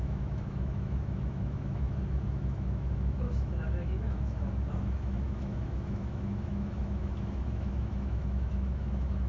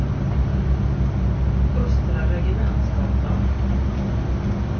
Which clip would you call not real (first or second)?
first